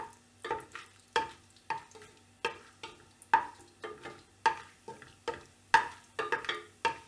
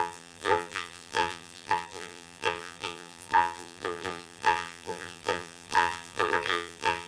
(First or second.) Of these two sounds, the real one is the first